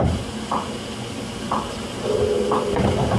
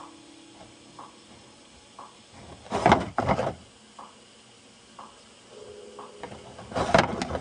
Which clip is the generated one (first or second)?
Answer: first